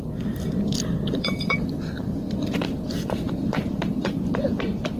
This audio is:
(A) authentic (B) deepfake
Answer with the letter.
B